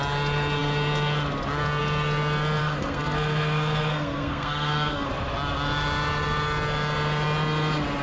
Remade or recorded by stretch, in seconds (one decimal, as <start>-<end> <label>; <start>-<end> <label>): 0.0-2.6 recorded; 2.6-5.1 remade; 5.1-8.0 recorded